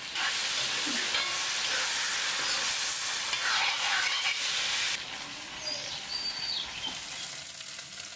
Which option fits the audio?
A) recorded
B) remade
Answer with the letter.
A